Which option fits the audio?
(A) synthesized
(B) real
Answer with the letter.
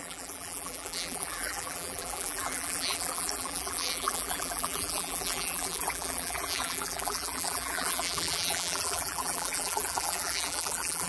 A